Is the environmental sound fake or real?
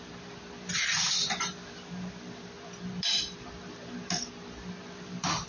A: real